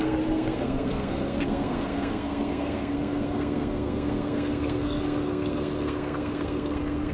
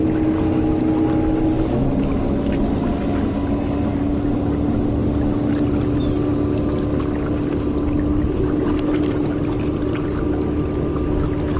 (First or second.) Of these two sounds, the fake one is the first